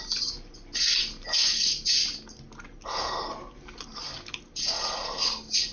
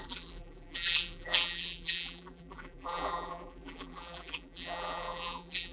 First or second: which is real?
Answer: first